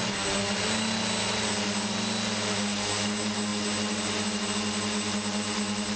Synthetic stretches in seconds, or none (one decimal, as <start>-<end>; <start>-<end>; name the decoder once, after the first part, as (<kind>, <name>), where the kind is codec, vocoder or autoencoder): none